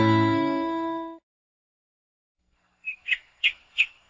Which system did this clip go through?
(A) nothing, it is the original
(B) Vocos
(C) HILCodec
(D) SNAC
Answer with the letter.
D